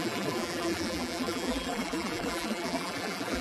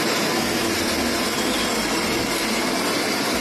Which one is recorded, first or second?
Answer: second